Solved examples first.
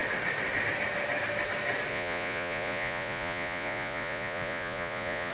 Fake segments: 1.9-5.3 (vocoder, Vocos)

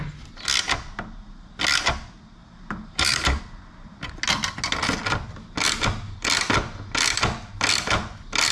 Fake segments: 2.4-3.4 (vocoder, BigVGAN v2)

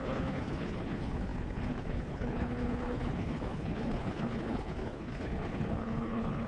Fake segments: 0.0-6.5 (codec, HILCodec)